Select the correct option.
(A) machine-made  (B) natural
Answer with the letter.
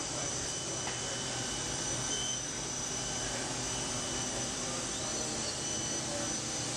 A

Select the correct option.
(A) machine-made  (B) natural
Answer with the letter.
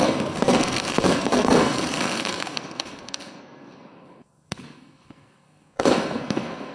A